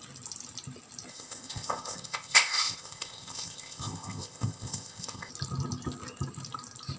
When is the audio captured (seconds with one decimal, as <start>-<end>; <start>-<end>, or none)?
0.0-1.1; 5.3-7.0